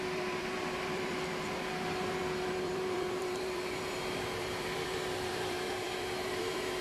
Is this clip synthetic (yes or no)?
yes